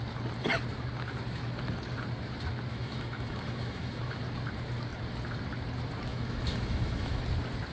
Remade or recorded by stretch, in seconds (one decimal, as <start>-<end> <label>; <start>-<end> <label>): 0.0-2.7 recorded; 2.7-4.2 remade; 4.2-6.1 recorded; 6.1-7.2 remade; 7.2-7.7 recorded